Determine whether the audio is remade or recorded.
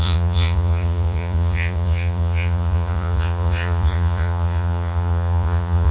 remade